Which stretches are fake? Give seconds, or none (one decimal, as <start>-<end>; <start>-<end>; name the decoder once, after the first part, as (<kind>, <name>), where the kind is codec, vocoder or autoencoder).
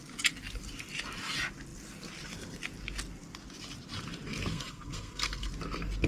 4.5-5.5 (codec, SNAC)